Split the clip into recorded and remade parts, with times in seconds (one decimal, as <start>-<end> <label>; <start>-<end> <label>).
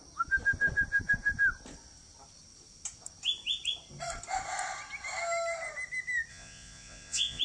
0.0-6.3 recorded; 6.3-7.4 remade